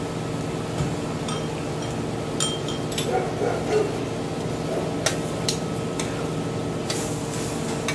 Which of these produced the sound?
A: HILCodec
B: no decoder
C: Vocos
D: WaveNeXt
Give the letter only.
B